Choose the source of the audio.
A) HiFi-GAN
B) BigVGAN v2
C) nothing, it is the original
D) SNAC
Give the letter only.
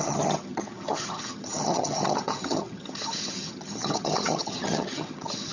A